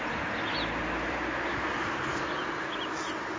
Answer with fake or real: real